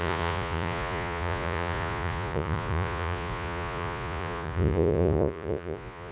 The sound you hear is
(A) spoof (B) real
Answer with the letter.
A